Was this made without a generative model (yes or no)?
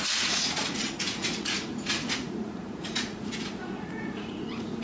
no